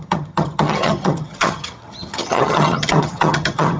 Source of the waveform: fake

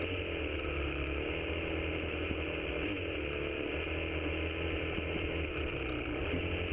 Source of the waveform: real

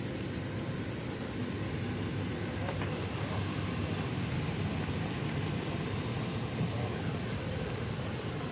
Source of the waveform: real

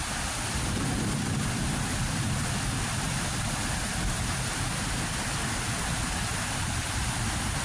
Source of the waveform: real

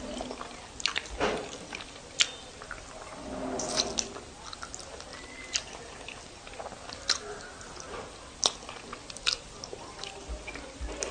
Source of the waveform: real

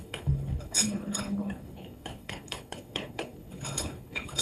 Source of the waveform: fake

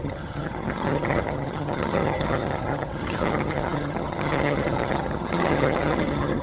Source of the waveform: fake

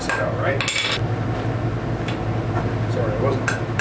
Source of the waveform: real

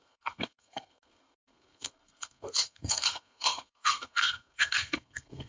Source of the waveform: fake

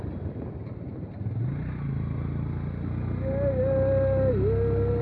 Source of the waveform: real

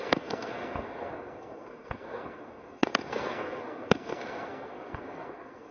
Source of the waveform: fake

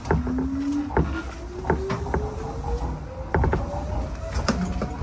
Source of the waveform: real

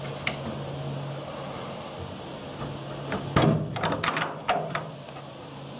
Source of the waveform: real